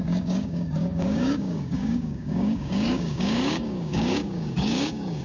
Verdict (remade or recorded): remade